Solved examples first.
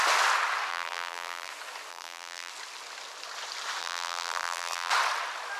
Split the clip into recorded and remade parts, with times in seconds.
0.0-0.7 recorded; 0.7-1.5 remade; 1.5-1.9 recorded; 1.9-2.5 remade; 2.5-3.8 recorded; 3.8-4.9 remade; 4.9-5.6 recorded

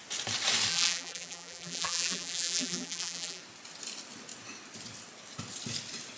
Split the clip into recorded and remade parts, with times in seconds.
0.0-0.7 recorded; 0.7-3.4 remade; 3.4-6.2 recorded

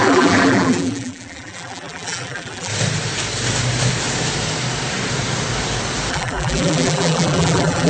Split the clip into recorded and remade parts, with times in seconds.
0.0-2.7 remade; 2.7-6.1 recorded; 6.1-7.9 remade